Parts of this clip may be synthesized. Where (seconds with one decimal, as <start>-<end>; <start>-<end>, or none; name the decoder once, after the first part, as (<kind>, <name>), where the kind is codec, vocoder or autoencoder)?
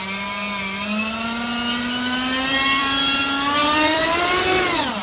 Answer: 2.5-3.2 (vocoder, BigVGAN v2); 3.6-4.3